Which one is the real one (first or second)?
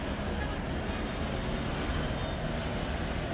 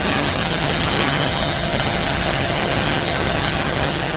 first